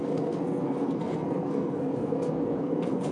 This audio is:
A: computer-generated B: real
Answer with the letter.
A